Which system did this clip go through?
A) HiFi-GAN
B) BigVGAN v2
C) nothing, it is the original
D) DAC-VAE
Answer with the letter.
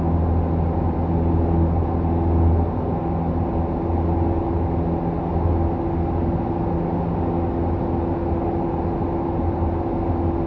C